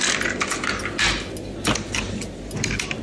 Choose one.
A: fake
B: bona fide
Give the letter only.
B